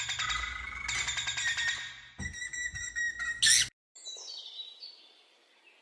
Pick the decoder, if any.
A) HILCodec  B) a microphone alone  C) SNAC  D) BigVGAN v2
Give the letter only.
B